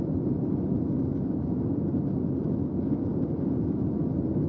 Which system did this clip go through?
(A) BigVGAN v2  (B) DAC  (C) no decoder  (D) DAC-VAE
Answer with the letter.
C